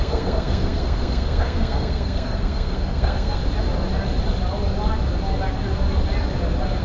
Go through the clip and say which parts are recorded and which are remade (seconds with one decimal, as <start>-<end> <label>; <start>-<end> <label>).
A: 0.0-3.4 remade; 3.4-6.8 recorded